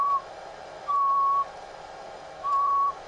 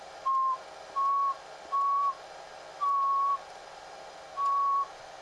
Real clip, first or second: second